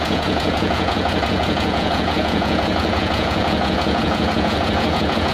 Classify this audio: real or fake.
fake